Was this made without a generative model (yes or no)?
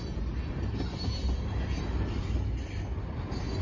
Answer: yes